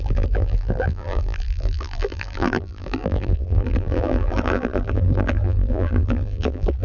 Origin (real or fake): fake